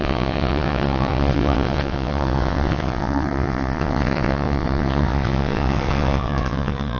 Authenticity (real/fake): fake